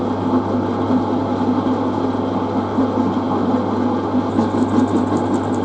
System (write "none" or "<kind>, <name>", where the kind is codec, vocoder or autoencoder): none